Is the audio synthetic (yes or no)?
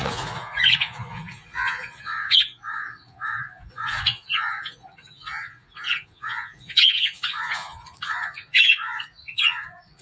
yes